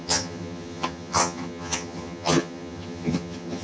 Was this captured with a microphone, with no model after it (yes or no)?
no